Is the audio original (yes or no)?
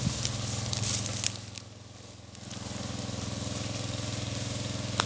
yes